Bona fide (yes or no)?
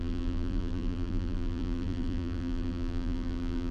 no